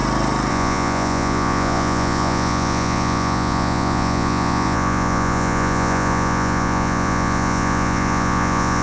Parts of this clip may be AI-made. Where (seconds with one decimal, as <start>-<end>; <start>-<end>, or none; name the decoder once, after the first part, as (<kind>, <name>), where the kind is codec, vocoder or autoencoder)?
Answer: 0.5-8.8 (vocoder, Vocos)